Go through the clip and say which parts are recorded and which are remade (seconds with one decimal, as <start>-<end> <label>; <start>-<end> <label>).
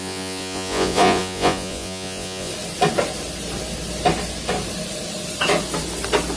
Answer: 0.0-2.5 remade; 2.5-6.4 recorded